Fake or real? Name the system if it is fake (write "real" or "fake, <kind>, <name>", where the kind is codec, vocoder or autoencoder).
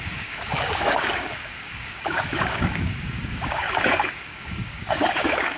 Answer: fake, codec, DAC